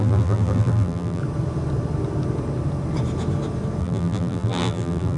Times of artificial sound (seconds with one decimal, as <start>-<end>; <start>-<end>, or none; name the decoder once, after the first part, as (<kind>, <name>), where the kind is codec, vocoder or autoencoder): 0.0-1.2 (vocoder, BigVGAN v2); 3.8-5.2